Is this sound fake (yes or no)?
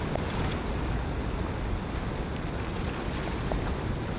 no